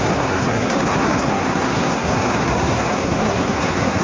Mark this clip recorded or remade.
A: remade